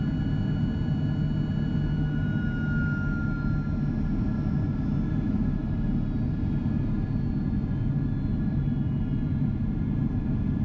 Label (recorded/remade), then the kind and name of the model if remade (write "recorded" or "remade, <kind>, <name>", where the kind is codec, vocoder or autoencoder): recorded